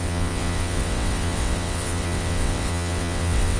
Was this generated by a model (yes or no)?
yes